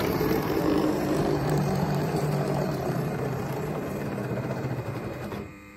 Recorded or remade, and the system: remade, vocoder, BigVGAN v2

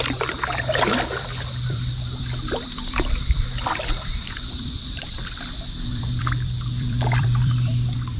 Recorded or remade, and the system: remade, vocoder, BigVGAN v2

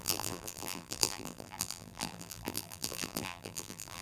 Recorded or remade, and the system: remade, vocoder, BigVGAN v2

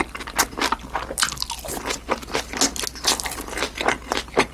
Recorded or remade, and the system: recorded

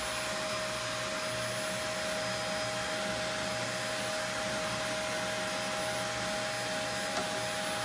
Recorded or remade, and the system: recorded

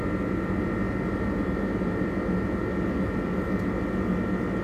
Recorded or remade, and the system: recorded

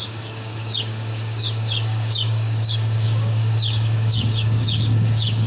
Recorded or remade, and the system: remade, codec, DAC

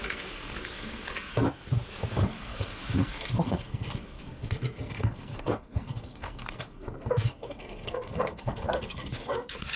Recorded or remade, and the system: remade, codec, SNAC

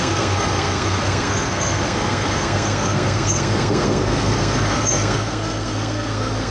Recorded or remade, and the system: remade, codec, SNAC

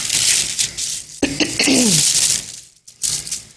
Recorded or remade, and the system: recorded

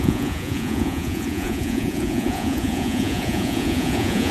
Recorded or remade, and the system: remade, vocoder, Vocos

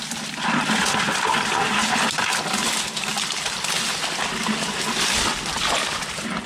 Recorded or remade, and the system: recorded